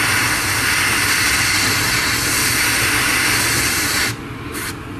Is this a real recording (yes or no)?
yes